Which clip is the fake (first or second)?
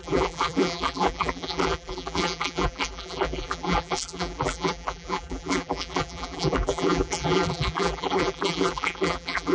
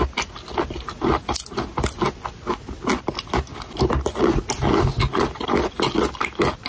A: first